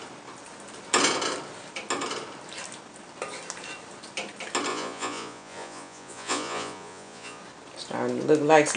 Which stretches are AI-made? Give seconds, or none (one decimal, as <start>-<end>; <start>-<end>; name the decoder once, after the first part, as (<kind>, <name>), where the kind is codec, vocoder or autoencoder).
4.7-7.4 (vocoder, Vocos)